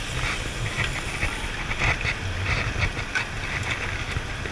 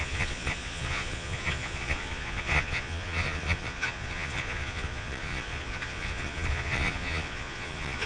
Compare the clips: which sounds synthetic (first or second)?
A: second